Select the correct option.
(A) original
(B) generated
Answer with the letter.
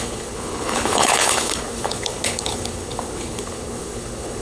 B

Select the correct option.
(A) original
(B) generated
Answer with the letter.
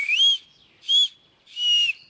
A